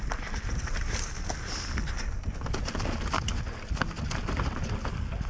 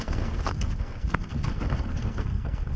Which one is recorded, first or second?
first